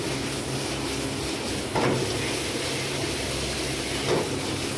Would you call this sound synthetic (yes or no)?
no